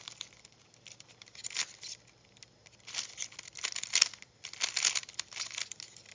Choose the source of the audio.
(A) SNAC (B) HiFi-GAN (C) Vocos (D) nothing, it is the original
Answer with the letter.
D